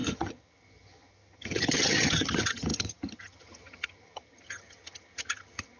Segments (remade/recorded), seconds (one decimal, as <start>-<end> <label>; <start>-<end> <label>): 0.0-5.8 remade